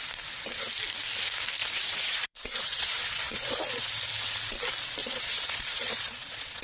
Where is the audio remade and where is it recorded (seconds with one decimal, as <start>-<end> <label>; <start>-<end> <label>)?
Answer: 0.0-1.6 recorded; 1.6-3.6 remade; 3.6-5.0 recorded; 5.0-6.6 remade